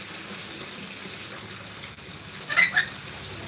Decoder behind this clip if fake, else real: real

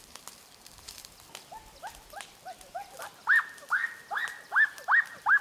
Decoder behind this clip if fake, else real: real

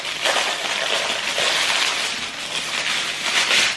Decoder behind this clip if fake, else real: real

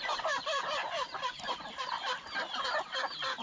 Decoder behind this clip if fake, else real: real